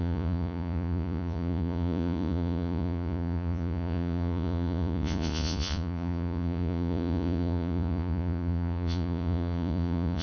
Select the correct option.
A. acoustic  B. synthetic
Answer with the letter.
B